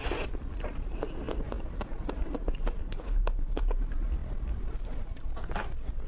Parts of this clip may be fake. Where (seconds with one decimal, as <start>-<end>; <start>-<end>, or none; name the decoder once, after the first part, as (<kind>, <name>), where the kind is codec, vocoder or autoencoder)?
2.8-3.6 (codec, HILCodec)